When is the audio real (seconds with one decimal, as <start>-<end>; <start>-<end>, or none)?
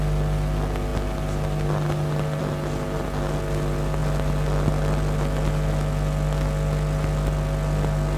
0.0-8.2